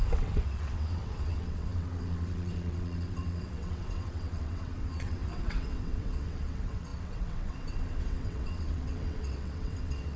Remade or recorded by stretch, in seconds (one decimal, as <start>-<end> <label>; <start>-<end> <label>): 0.0-10.2 remade